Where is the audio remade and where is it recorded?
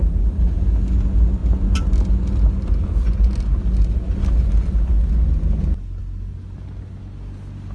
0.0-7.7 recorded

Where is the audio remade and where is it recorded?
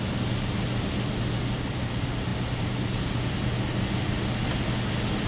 0.0-5.3 recorded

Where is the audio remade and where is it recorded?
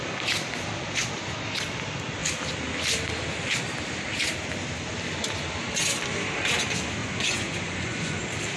0.0-7.0 recorded; 7.0-8.2 remade; 8.2-8.6 recorded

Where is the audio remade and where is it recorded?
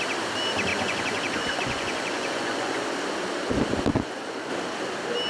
0.0-0.7 recorded; 0.7-2.8 remade; 2.8-3.9 recorded; 3.9-4.5 remade; 4.5-5.3 recorded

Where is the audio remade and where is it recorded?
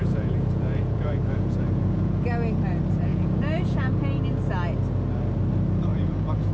0.0-2.2 remade; 2.2-3.1 recorded; 3.1-3.9 remade; 3.9-5.9 recorded; 5.9-6.5 remade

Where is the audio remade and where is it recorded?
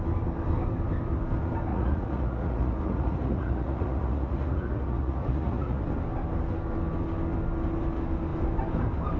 0.0-1.7 recorded; 1.7-5.8 remade; 5.8-9.2 recorded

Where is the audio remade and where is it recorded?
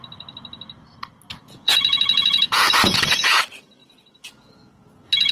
0.0-1.3 recorded; 1.3-3.4 remade; 3.4-3.8 recorded; 3.8-5.3 remade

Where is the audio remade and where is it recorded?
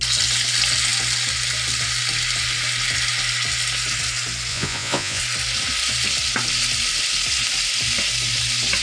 0.0-4.5 recorded; 4.5-5.2 remade; 5.2-8.8 recorded